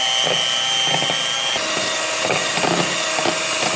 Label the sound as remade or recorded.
recorded